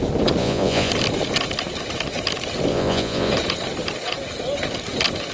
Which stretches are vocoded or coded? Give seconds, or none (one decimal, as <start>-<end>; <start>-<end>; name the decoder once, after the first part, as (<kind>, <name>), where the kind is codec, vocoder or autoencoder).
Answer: 0.4-0.9 (vocoder, Vocos); 2.7-3.3